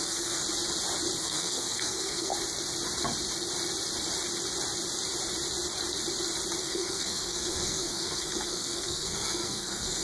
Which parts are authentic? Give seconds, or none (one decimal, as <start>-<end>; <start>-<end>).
0.4-1.2; 2.3-6.6